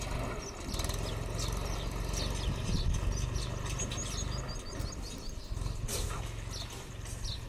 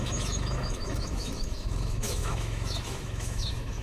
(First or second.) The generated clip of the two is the second